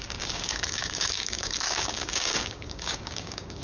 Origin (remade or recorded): remade